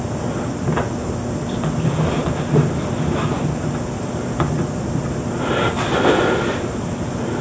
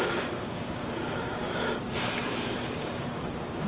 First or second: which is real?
first